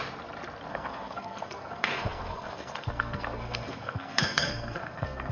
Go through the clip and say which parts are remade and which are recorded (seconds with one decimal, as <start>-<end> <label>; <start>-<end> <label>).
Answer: 0.0-0.7 recorded; 0.7-5.3 remade